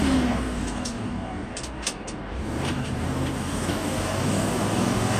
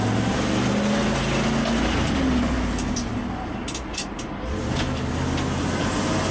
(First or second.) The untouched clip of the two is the second